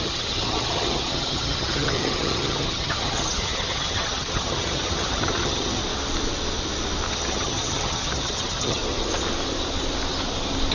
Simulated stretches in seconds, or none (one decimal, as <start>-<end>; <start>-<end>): 0.0-5.8; 7.1-8.8